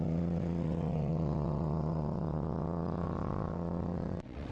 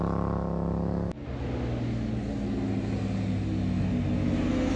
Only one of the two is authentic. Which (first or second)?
second